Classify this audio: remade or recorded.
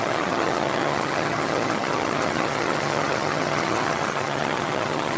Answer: remade